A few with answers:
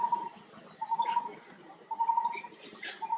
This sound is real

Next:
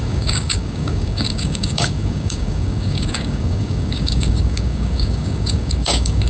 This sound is fake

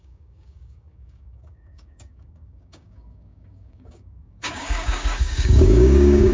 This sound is fake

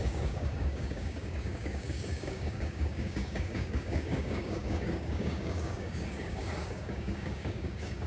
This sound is fake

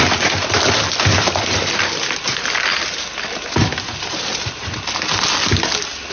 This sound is real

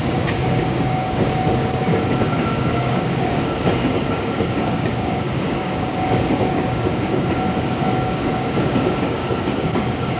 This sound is fake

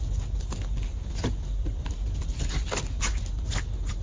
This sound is real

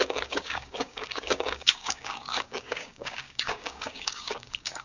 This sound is fake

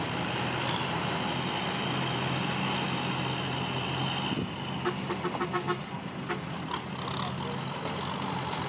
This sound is real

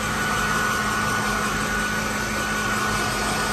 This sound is real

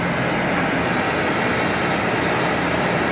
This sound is real